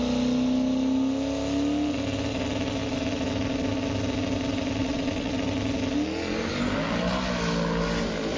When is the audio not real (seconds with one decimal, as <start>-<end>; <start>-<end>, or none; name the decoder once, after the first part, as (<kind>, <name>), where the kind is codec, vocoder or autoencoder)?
4.8-5.3 (vocoder, WaveNeXt)